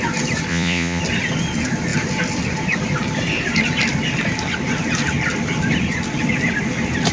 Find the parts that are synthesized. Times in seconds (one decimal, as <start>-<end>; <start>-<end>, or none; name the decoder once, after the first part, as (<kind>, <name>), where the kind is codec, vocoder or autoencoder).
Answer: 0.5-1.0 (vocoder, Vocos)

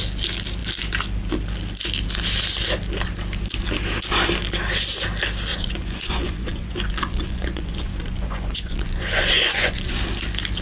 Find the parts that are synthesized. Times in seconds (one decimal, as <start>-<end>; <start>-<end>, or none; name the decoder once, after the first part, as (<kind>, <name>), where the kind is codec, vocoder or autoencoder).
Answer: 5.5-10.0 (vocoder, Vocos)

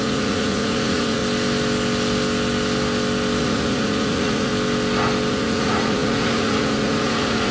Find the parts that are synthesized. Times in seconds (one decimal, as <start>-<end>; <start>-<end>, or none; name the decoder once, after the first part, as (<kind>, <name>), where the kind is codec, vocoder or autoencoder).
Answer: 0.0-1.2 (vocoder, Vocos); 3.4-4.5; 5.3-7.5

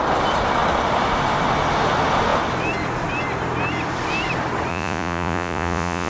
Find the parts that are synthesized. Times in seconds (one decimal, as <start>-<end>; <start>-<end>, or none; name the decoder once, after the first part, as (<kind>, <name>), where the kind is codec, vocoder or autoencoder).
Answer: 4.7-6.1 (vocoder, Vocos)

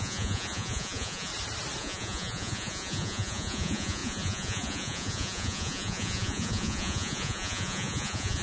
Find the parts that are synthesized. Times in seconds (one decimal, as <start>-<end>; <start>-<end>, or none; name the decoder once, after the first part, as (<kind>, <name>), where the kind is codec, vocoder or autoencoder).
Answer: 0.0-1.3 (vocoder, Vocos); 1.8-8.4

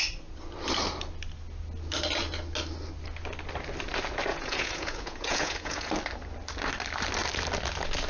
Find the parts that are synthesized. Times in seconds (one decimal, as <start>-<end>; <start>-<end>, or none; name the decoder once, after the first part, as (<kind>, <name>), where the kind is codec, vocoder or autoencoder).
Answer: 4.3-5.9 (vocoder, Vocos)

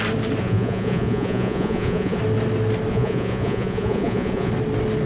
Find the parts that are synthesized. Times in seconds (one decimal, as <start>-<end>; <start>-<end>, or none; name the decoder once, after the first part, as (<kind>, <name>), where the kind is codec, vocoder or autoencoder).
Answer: 0.4-2.2 (vocoder, Vocos); 2.9-4.5

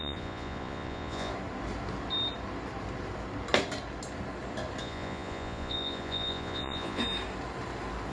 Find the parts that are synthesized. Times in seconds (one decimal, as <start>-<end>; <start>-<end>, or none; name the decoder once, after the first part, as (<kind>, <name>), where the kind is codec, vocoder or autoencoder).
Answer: 0.0-1.3 (vocoder, Vocos); 4.8-7.0